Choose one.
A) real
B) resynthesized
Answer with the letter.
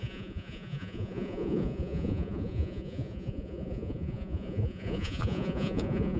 B